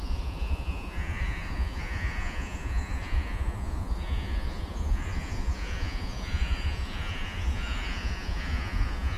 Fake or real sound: fake